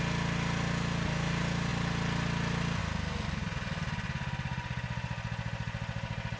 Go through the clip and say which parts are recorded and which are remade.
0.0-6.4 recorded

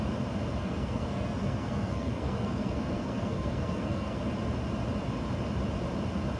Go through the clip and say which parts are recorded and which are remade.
0.0-0.6 recorded; 0.6-4.2 remade; 4.2-6.4 recorded